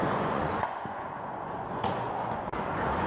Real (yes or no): no